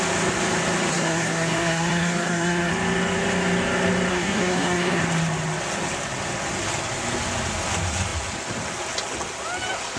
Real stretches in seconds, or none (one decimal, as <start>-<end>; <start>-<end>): 0.0-0.9; 2.7-4.1; 5.0-10.0